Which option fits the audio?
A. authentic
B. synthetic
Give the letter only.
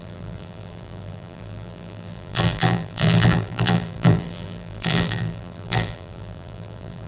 B